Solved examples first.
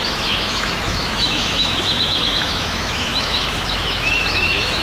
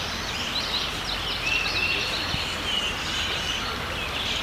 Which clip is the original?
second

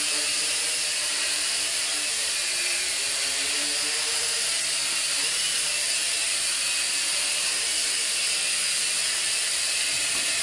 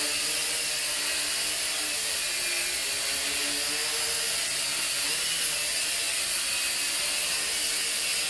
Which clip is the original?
second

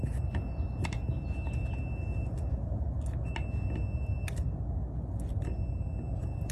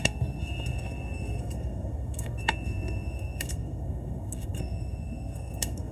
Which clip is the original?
first